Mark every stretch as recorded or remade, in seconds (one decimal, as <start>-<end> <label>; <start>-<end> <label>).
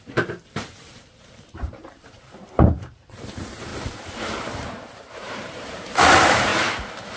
0.0-3.7 remade; 3.7-5.0 recorded; 5.0-6.5 remade; 6.5-7.2 recorded